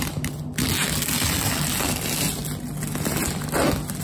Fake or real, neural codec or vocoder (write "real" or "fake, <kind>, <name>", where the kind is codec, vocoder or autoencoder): real